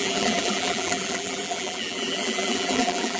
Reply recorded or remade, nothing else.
remade